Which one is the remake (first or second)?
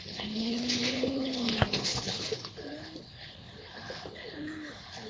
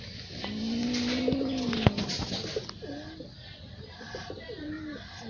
first